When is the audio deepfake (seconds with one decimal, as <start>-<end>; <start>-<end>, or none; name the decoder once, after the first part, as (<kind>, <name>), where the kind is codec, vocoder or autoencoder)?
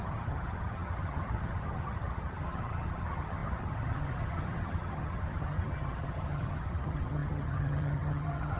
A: 0.0-8.6 (vocoder, HiFi-GAN)